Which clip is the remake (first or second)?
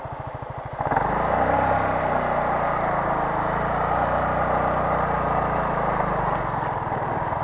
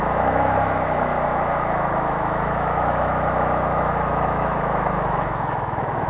second